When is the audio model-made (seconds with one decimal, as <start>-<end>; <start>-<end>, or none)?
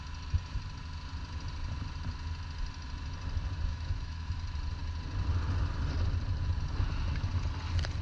3.7-4.3